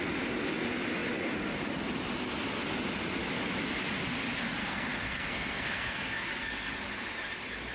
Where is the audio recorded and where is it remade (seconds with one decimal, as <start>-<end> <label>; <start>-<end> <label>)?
0.0-4.6 recorded; 4.6-6.7 remade; 6.7-7.7 recorded